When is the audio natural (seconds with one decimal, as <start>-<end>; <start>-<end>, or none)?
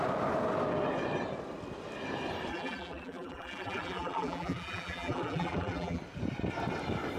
0.0-2.5; 6.0-7.2